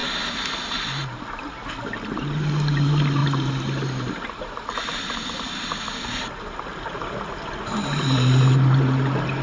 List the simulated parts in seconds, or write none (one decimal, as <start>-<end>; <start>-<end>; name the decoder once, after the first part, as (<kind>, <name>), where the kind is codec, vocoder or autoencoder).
none